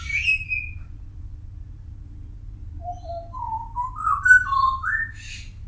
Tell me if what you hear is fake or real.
real